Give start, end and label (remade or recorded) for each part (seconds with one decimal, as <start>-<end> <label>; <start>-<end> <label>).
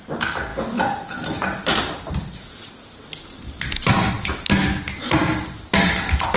0.0-6.4 recorded